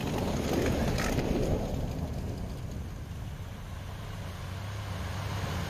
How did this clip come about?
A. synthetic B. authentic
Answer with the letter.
B